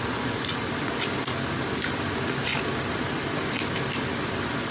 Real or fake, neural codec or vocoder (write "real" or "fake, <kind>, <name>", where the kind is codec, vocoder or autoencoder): real